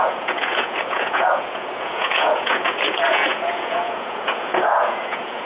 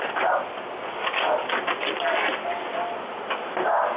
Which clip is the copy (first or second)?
first